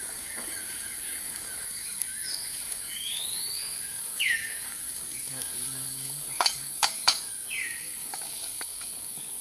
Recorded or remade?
remade